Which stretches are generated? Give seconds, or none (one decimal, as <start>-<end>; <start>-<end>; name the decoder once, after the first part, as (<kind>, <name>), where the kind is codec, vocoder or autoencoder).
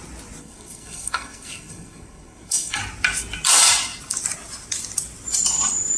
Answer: 0.4-2.8 (codec, SNAC)